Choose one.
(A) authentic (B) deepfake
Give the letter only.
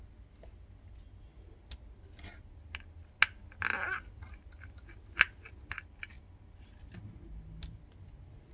A